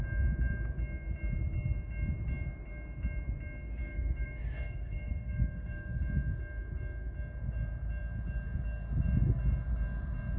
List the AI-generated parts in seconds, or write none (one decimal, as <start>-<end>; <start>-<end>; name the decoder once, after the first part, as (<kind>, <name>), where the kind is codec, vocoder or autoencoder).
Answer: 3.8-6.0 (codec, DAC)